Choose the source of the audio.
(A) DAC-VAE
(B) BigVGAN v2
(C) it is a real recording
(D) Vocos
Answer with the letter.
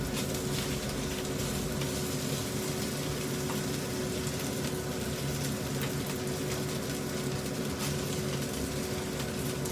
C